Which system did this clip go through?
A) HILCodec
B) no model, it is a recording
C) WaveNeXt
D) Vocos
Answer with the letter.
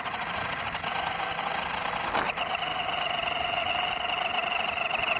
B